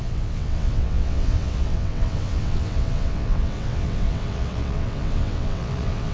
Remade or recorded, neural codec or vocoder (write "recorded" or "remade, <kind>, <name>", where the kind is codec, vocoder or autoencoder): remade, vocoder, WaveNeXt